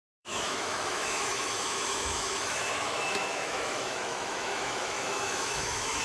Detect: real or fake fake